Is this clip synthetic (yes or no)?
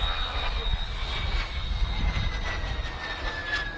no